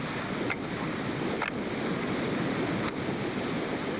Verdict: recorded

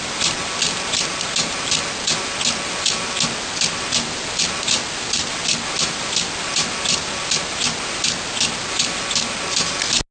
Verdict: recorded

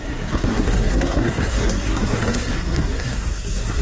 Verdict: remade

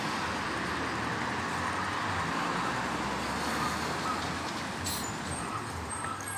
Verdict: recorded